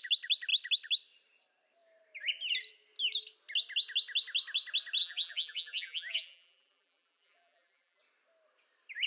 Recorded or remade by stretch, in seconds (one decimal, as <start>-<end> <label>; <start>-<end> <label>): 0.0-5.0 recorded; 5.0-8.0 remade; 8.0-9.1 recorded